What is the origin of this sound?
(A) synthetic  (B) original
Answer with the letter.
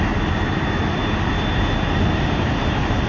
B